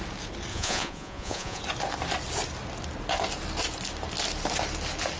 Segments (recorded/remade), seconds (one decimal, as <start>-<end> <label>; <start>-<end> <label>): 0.0-0.5 recorded; 0.5-1.6 remade; 1.6-5.2 recorded